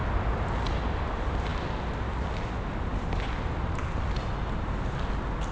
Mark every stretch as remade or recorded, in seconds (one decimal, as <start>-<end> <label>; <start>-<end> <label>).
0.0-5.5 recorded